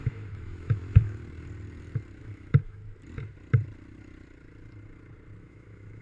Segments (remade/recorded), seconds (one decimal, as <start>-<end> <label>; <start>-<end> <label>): 0.0-1.2 remade; 1.2-2.2 recorded; 2.2-2.8 remade; 2.8-5.4 recorded; 5.4-6.0 remade